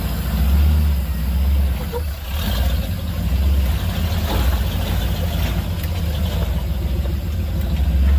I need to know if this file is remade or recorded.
recorded